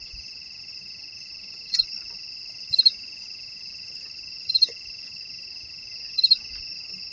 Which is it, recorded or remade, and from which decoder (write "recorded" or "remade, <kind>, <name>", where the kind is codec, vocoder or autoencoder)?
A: recorded